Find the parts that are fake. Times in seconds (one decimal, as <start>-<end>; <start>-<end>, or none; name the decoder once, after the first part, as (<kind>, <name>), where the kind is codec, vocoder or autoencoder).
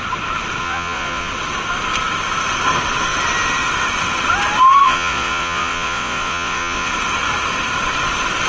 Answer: 0.6-1.3 (vocoder, Vocos); 4.8-6.9